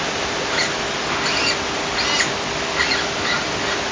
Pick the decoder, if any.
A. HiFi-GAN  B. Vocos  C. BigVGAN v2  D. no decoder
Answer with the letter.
D